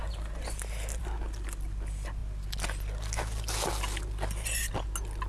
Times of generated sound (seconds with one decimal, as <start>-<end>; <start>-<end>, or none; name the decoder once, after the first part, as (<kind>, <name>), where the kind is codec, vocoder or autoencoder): none

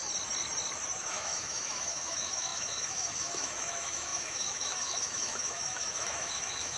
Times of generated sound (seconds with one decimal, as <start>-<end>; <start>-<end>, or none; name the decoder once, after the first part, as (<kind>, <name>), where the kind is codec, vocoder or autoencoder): 1.0-6.8 (autoencoder, DAC-VAE)

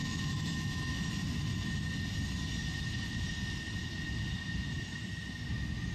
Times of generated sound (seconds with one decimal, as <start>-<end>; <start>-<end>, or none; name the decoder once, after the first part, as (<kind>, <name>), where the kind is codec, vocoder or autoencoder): 0.0-1.1 (autoencoder, DAC-VAE)

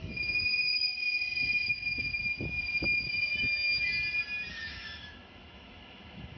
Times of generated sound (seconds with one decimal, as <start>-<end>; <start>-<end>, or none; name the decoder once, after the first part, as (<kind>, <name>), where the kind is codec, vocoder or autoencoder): 0.0-0.7 (autoencoder, DAC-VAE); 1.7-2.2; 3.4-3.9; 4.5-6.4

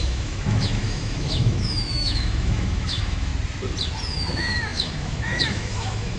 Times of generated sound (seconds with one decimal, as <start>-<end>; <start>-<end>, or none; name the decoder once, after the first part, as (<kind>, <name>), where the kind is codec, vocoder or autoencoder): 0.0-3.3 (autoencoder, DAC-VAE); 4.1-6.2